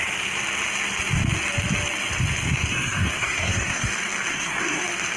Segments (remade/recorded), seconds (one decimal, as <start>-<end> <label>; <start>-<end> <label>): 0.0-2.7 recorded; 2.7-3.9 remade; 3.9-4.3 recorded; 4.3-4.8 remade; 4.8-5.2 recorded